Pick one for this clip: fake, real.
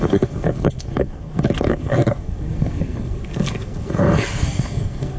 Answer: fake